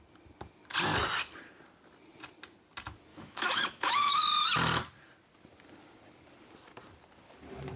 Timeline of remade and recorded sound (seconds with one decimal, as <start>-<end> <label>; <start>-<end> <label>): 0.0-3.1 recorded; 3.1-4.2 remade; 4.2-7.8 recorded